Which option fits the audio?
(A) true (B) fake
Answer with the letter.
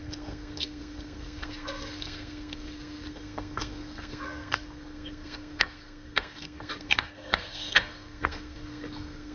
B